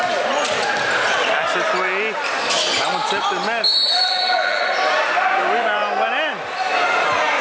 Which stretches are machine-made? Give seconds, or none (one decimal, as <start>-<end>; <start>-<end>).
3.8-4.6